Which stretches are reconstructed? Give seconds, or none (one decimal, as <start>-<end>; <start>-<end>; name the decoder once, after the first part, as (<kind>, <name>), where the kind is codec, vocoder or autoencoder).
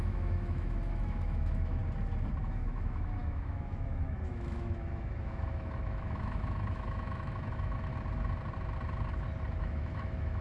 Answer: 0.0-1.8 (autoencoder, DAC-VAE); 2.4-7.9; 9.6-10.4